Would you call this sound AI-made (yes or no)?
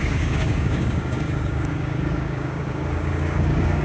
yes